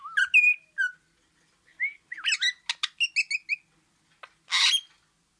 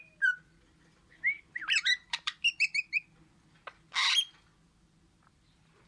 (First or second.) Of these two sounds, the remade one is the second